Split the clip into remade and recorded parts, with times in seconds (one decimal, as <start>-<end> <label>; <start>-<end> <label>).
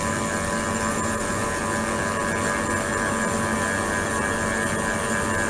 0.0-0.9 recorded; 0.9-1.6 remade; 1.6-5.5 recorded